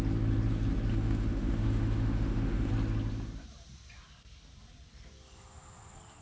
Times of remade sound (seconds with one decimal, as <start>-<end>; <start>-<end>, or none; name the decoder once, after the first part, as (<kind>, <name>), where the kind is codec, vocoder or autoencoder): 0.9-2.7 (autoencoder, DAC-VAE)